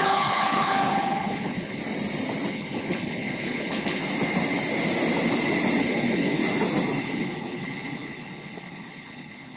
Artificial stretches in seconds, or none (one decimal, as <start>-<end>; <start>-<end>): 0.0-1.8; 2.5-4.0; 5.8-6.4; 7.0-9.6